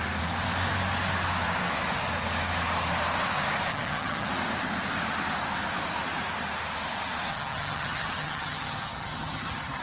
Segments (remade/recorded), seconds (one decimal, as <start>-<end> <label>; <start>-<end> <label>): 0.0-3.7 recorded; 3.7-4.3 remade; 4.3-7.3 recorded; 7.3-9.8 remade